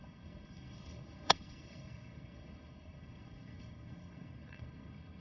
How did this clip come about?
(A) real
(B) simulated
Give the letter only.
B